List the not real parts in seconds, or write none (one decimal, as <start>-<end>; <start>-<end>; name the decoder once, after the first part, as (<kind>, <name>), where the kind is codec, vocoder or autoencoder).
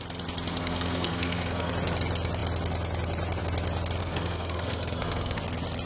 0.6-1.7 (codec, SNAC); 4.0-5.4